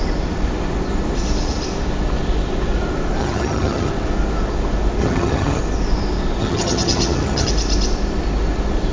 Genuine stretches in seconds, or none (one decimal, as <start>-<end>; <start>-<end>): 0.0-3.2; 3.9-5.0; 5.6-6.4; 7.5-8.9